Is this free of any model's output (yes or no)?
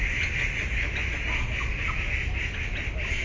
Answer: yes